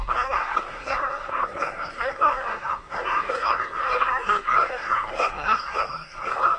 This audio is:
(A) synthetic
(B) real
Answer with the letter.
A